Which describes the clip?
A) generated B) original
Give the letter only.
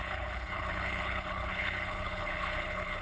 A